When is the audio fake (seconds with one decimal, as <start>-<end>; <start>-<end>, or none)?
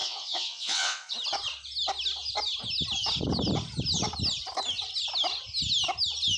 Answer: 0.0-1.1